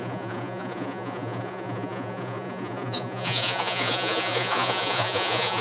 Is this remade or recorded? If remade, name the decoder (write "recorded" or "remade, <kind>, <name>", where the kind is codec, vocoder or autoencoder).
remade, vocoder, Vocos